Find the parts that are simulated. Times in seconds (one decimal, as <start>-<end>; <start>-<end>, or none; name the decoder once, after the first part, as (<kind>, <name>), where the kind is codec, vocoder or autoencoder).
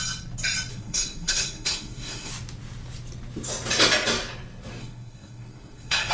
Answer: 0.7-2.3 (codec, SNAC); 4.8-6.1